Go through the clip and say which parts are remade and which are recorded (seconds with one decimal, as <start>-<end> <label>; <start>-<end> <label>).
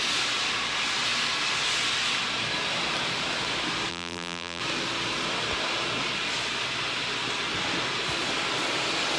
0.0-3.9 recorded; 3.9-4.6 remade; 4.6-9.2 recorded